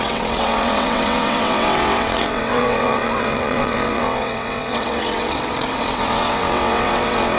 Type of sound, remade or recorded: remade